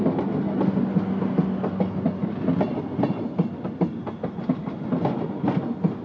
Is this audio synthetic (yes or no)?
no